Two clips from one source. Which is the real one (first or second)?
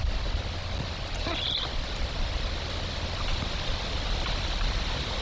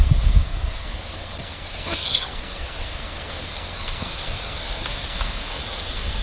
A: first